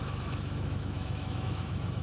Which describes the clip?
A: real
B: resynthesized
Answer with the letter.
B